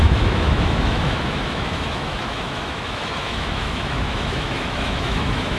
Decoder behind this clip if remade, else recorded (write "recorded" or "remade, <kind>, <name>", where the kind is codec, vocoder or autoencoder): remade, autoencoder, DAC-VAE